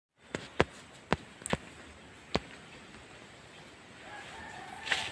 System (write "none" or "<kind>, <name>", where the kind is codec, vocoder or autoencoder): none